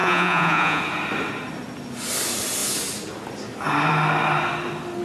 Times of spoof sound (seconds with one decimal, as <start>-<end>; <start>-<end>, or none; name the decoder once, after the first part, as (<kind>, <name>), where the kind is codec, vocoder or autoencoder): 0.0-0.8 (vocoder, Vocos)